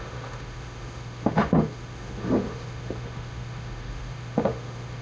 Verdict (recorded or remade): remade